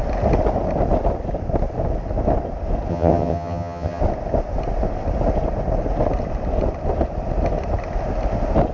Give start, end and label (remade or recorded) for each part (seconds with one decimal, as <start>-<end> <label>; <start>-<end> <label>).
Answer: 0.0-2.9 recorded; 2.9-4.0 remade; 4.0-8.7 recorded